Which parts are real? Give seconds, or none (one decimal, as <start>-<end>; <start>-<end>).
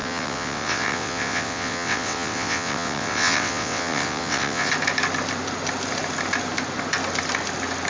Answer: 4.7-7.9